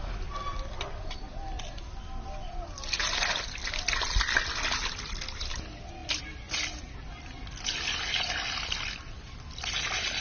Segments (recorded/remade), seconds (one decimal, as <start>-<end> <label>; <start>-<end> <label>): 0.0-10.2 recorded